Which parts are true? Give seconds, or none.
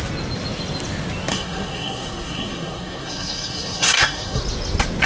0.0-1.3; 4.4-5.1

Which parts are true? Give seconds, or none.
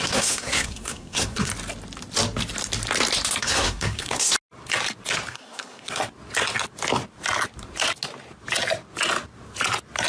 1.5-3.4; 4.3-5.3; 6.0-10.1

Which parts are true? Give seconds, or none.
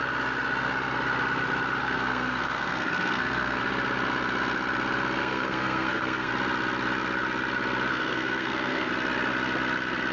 0.0-1.8; 3.6-5.2; 6.3-7.9; 8.9-10.1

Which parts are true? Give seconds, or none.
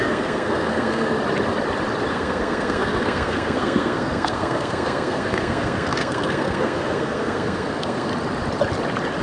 1.1-2.1; 8.1-9.2